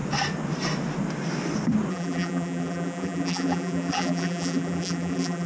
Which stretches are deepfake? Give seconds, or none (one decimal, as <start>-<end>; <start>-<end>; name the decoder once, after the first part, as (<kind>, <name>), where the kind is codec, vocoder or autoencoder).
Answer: 1.9-5.5 (vocoder, BigVGAN v2)